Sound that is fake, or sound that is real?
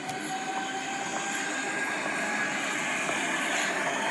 real